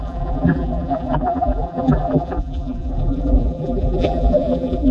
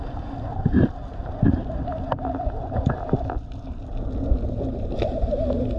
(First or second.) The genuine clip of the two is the second